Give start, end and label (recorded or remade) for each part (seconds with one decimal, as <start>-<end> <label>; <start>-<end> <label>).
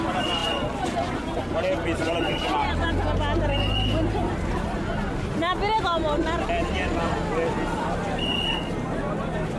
0.0-9.6 recorded